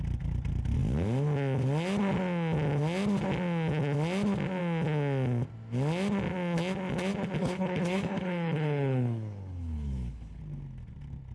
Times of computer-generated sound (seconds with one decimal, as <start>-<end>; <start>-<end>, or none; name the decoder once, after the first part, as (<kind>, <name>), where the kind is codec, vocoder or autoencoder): 7.4-10.4 (codec, HILCodec)